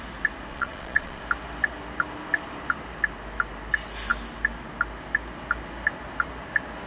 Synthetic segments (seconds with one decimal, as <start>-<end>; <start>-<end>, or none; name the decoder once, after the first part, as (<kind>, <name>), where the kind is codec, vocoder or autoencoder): 0.5-1.2 (vocoder, Vocos)